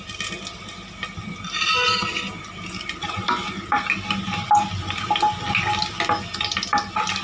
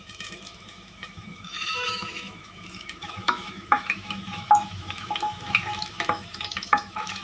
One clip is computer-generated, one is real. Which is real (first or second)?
first